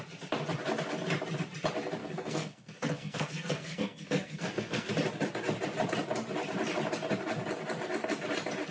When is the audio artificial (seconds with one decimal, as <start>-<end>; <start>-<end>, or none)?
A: 2.0-4.9